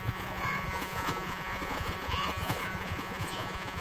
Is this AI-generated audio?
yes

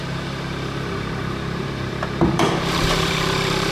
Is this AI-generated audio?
yes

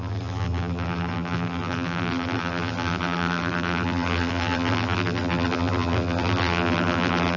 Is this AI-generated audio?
yes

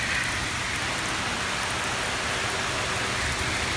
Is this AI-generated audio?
no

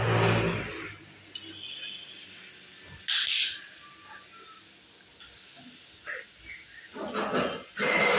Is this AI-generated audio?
no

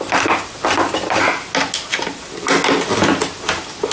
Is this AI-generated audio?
no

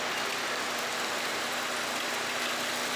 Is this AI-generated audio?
no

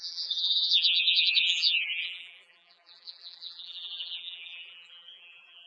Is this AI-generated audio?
yes